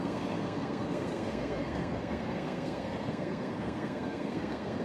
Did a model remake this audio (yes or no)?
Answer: yes